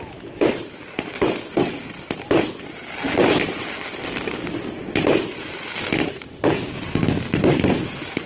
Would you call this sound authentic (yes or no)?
no